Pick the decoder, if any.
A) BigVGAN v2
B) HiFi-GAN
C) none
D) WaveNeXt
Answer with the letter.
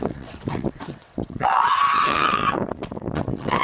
D